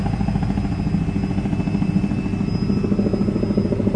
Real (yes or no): yes